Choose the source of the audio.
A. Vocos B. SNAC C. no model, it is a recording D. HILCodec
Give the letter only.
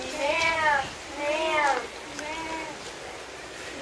C